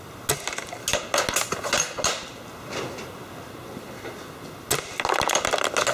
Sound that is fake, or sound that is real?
real